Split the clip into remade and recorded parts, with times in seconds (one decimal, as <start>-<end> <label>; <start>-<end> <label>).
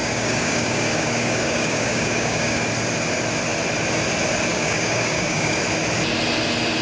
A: 0.0-2.7 remade; 2.7-4.5 recorded; 4.5-5.6 remade; 5.6-6.8 recorded